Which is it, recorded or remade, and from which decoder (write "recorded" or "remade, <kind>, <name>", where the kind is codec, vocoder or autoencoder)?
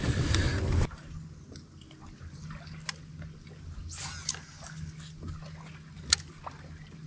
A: recorded